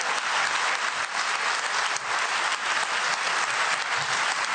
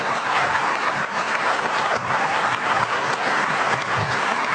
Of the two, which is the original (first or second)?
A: first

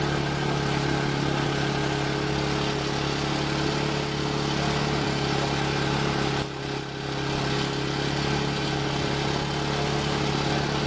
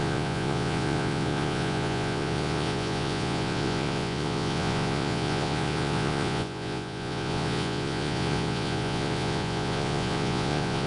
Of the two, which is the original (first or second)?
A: first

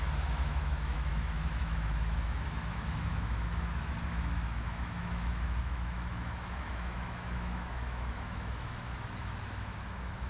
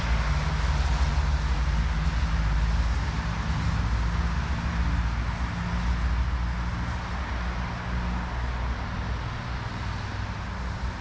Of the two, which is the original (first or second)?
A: second